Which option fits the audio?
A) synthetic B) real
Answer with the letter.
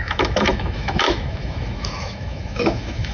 A